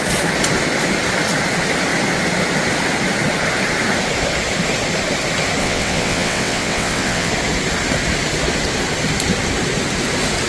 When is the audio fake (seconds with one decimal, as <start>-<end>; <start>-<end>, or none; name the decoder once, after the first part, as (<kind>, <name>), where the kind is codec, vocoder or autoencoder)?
5.6-7.3 (vocoder, WaveNeXt)